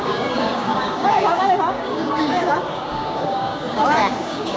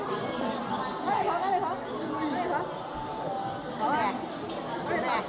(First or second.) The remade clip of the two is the first